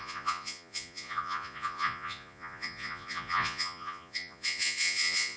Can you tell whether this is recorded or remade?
remade